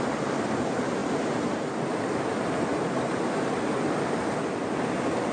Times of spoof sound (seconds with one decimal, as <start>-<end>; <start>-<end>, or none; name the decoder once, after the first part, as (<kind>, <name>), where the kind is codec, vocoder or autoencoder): 1.0-1.7 (vocoder, BigVGAN v2); 2.7-3.5